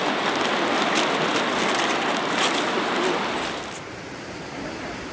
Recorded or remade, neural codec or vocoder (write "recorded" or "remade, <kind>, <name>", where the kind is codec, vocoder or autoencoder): recorded